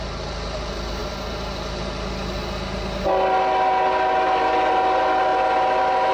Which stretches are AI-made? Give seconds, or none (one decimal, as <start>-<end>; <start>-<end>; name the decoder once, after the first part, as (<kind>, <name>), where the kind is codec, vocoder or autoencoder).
none